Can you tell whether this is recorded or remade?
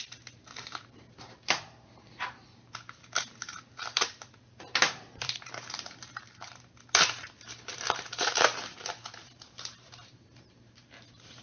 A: remade